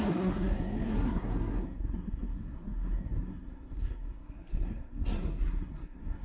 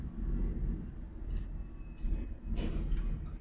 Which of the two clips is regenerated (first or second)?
first